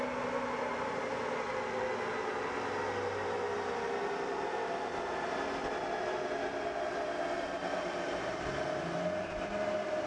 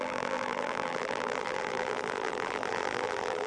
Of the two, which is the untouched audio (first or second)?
first